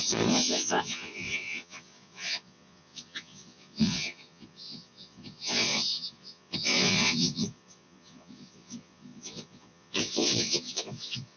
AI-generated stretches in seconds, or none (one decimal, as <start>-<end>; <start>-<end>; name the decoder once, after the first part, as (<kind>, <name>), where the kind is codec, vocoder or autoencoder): 0.0-11.4 (vocoder, Vocos)